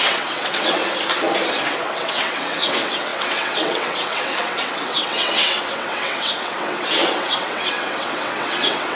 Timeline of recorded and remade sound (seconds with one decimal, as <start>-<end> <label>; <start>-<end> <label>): 0.0-0.8 remade; 0.8-1.7 recorded; 1.7-9.0 remade